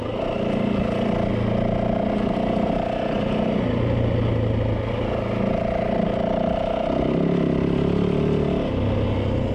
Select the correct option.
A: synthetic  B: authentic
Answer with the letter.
B